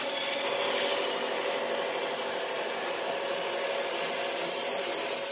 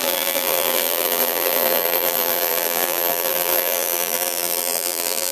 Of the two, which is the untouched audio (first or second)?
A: first